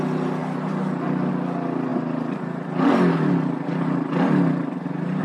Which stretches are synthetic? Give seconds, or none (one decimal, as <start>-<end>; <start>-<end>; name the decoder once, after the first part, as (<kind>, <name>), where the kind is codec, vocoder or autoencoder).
none